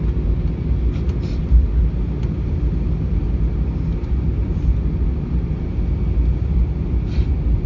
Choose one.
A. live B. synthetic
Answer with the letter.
A